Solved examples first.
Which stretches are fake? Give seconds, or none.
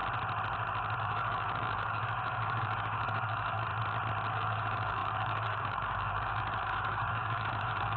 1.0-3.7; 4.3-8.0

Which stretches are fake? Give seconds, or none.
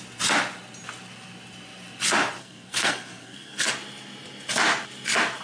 2.4-3.7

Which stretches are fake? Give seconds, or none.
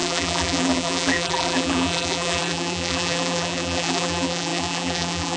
0.0-5.4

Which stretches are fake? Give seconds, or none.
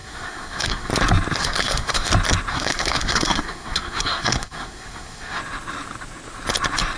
0.0-0.9; 1.4-2.1; 2.5-5.4